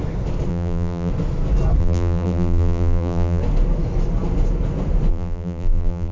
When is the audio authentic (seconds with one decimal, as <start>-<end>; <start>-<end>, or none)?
0.0-0.5; 1.1-1.8; 3.4-5.1